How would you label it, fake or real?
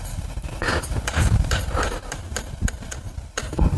fake